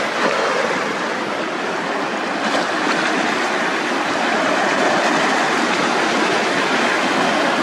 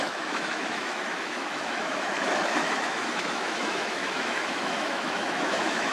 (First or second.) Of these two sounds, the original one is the first